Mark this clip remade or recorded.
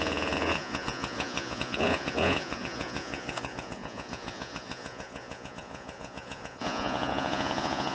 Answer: remade